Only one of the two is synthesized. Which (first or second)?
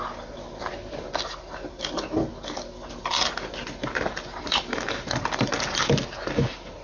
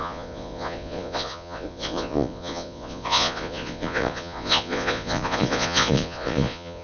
second